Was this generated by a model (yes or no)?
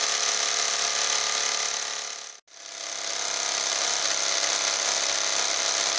no